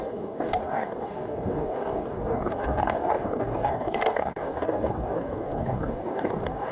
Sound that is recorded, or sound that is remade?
remade